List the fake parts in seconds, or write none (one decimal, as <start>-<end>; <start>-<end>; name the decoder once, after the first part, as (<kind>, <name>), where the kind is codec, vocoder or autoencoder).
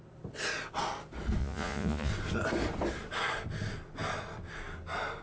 1.4-2.1 (vocoder, Vocos)